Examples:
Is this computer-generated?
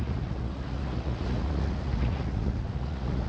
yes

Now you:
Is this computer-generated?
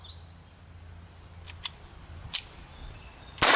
no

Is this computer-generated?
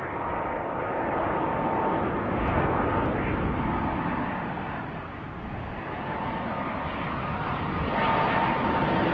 no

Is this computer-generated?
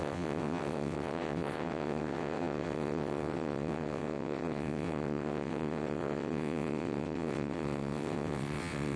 yes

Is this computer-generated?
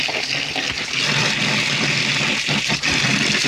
no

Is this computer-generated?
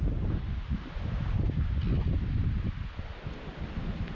no